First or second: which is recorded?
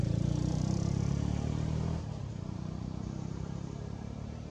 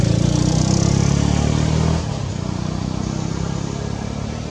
second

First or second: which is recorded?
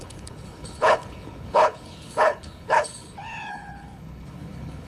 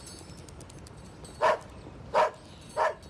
second